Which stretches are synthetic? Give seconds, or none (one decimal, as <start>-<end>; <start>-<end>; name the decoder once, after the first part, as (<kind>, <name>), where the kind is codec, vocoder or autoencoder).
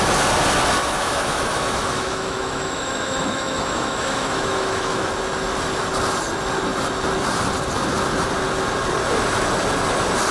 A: 0.8-5.1 (autoencoder, DAC-VAE)